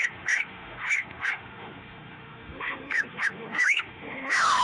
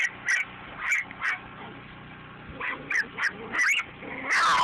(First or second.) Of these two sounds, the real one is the second